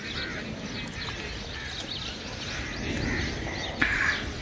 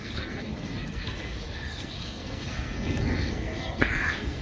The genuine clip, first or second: first